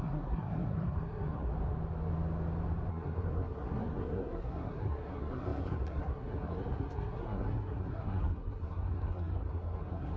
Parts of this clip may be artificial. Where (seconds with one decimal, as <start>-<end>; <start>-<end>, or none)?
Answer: 0.0-1.5; 2.9-10.2

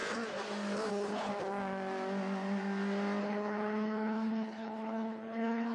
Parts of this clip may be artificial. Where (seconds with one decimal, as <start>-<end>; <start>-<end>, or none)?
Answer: 0.9-1.3; 3.2-5.7

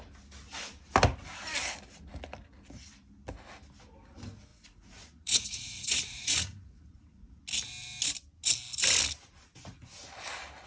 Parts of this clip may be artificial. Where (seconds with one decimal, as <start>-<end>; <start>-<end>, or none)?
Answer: 4.5-7.4